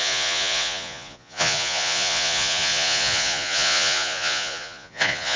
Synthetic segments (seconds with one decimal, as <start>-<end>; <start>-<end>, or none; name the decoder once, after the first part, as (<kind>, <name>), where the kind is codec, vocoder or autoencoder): 0.0-5.4 (vocoder, Vocos)